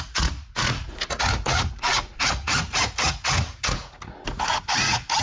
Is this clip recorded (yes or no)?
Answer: no